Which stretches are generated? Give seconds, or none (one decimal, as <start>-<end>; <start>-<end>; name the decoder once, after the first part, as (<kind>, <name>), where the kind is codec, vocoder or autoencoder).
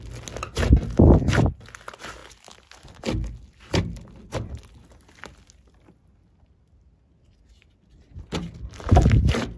none